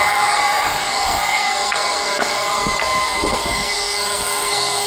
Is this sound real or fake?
fake